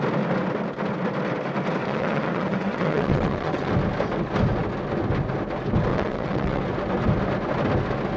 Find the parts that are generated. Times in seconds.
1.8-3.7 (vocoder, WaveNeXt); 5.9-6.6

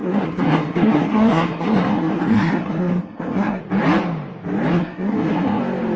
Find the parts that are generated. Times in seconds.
0.0-3.6 (codec, SNAC); 4.7-5.6

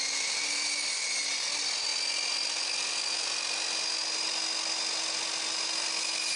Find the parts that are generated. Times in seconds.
none

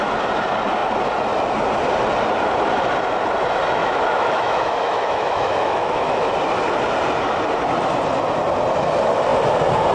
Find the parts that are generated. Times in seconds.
3.8-6.3 (autoencoder, DAC-VAE)